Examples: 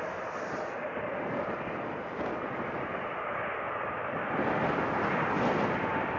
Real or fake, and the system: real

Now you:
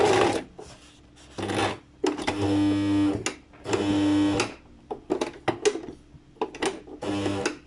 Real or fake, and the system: real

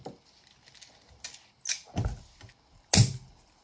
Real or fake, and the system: real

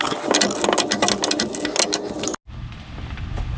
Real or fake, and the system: real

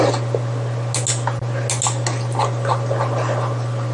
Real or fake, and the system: real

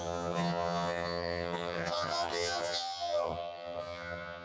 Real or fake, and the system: fake, vocoder, HiFi-GAN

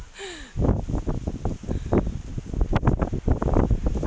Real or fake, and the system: real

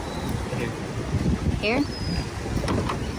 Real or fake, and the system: real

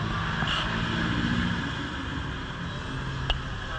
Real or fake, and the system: real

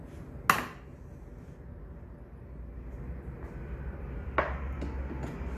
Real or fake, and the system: real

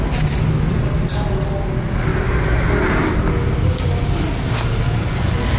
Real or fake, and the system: real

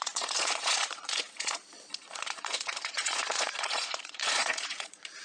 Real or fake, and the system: fake, vocoder, Vocos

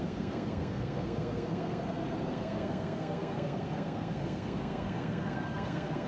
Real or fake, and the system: fake, codec, SNAC